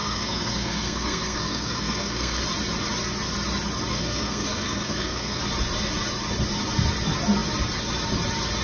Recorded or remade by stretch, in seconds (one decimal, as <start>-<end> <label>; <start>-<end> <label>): 0.0-2.4 remade; 2.4-3.9 recorded; 3.9-5.4 remade; 5.4-8.6 recorded

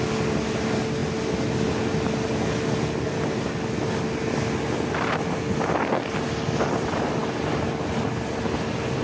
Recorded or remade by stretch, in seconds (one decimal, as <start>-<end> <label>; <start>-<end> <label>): 0.0-9.0 recorded

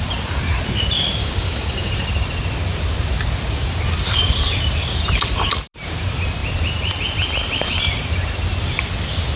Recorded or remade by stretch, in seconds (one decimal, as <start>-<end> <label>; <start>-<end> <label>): 0.0-1.2 recorded; 1.2-1.9 remade; 1.9-9.4 recorded

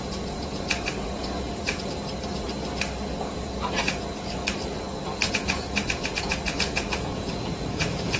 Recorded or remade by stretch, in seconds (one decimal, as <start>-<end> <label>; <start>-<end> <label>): 0.0-2.1 remade; 2.1-3.1 recorded; 3.1-4.4 remade; 4.4-5.3 recorded; 5.3-8.2 remade

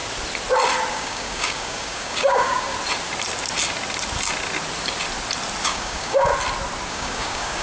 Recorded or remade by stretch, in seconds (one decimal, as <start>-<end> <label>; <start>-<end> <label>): 0.0-0.9 recorded; 0.9-2.7 remade; 2.7-5.6 recorded; 5.6-6.3 remade; 6.3-6.9 recorded; 6.9-7.6 remade